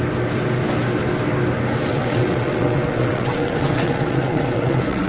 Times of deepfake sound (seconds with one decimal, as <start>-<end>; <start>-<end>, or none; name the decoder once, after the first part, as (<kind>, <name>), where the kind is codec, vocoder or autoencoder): 1.9-5.1 (vocoder, WaveNeXt)